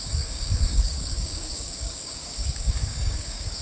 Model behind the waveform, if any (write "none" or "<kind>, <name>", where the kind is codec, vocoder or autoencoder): codec, DAC